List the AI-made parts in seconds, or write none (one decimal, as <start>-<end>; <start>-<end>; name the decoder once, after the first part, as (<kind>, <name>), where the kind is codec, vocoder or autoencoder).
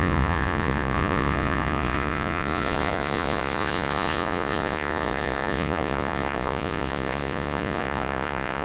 0.0-8.6 (vocoder, Vocos)